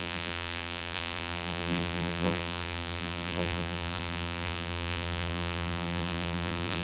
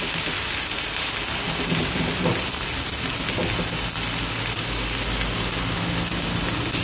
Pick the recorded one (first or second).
second